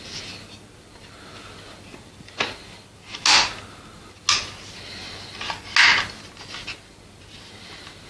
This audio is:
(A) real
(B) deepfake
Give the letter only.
A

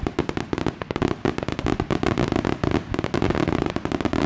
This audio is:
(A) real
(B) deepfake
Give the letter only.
A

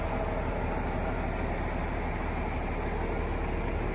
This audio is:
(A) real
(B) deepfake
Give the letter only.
A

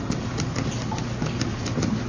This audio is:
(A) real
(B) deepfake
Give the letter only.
A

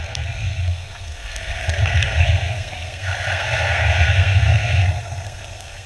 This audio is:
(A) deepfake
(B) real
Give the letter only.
A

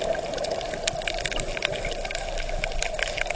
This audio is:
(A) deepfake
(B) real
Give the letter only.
B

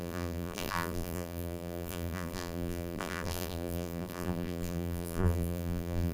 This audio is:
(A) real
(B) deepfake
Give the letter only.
B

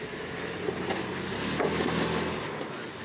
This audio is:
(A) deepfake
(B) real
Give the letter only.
B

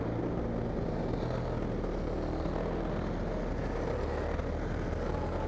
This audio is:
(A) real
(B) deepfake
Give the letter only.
A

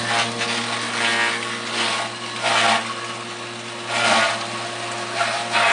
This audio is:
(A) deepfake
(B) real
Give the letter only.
B